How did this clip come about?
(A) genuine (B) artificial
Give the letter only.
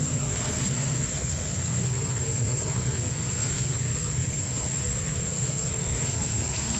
B